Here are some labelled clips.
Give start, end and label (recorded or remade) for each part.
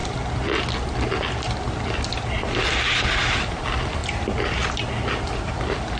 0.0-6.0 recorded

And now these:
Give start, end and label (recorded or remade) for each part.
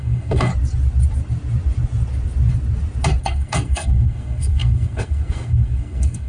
0.0-0.5 remade; 0.5-3.2 recorded; 3.2-6.3 remade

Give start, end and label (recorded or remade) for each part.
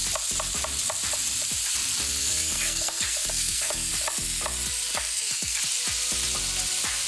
0.0-2.2 recorded; 2.2-3.9 remade; 3.9-4.9 recorded; 4.9-5.6 remade; 5.6-7.1 recorded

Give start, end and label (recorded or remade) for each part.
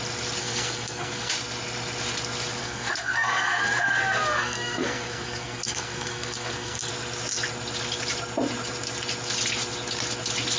0.0-0.4 recorded; 0.4-1.3 remade; 1.3-2.6 recorded; 2.6-6.9 remade; 6.9-10.6 recorded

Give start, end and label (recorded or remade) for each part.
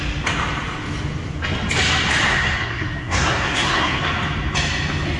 0.0-2.3 recorded; 2.3-4.0 remade; 4.0-5.2 recorded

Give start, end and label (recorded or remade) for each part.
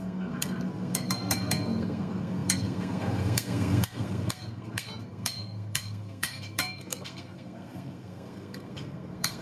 0.0-9.4 remade